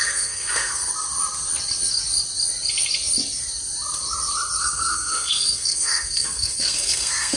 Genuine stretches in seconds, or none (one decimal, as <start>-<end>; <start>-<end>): 0.9-4.6